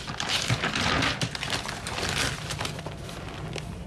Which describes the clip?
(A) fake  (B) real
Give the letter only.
B